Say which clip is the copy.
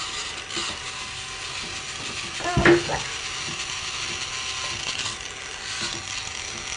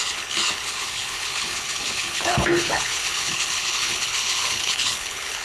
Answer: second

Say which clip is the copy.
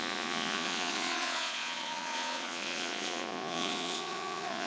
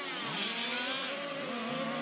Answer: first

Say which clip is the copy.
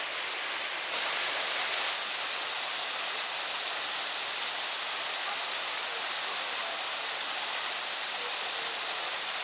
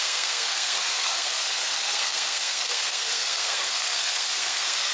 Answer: second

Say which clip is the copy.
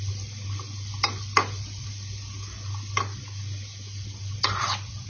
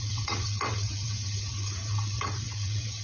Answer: second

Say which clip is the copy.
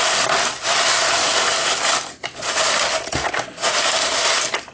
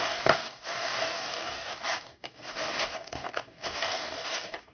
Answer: second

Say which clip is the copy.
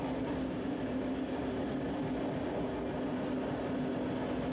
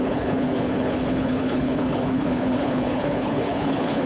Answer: second